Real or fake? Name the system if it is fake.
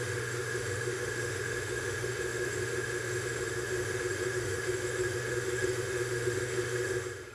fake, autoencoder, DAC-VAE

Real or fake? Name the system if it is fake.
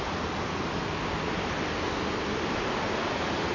real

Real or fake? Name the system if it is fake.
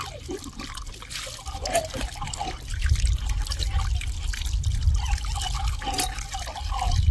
real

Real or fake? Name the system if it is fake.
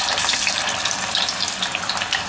real